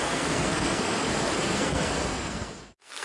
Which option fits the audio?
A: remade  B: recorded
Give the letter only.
A